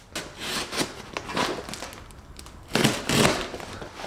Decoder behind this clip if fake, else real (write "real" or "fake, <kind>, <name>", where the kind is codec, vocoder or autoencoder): real